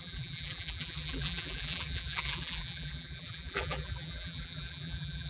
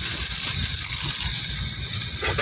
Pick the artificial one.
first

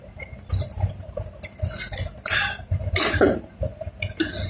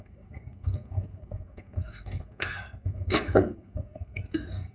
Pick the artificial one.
second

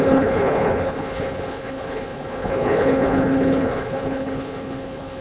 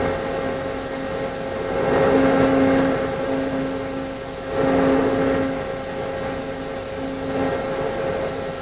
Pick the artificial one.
first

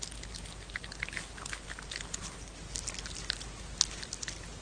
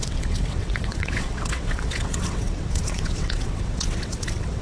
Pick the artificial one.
second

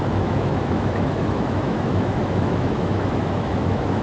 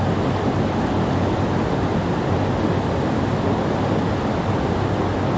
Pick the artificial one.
first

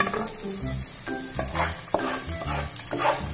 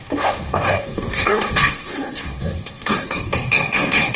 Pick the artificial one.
second